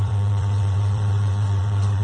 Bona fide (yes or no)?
no